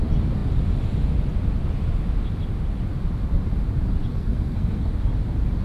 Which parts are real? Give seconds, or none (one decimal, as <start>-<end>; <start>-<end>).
0.0-4.1; 4.9-5.6